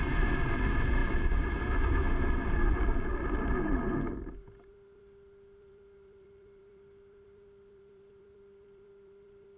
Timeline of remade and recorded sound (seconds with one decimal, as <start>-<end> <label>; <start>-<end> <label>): 0.0-9.6 remade